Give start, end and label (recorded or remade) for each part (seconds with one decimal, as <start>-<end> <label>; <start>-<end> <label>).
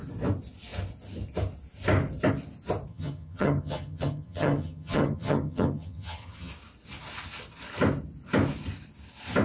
0.0-2.9 recorded; 2.9-6.5 remade; 6.5-9.4 recorded